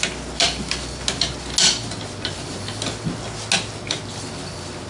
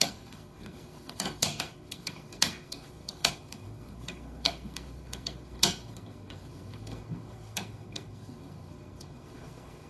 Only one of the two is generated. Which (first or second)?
second